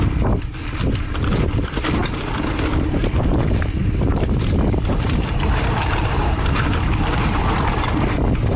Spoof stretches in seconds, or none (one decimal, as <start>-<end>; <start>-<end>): 3.8-8.2